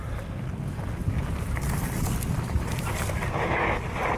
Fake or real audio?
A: real